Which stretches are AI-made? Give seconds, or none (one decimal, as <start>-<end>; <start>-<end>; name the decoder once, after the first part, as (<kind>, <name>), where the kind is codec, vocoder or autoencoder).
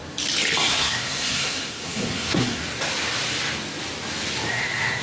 0.7-2.6 (codec, SNAC); 4.5-5.0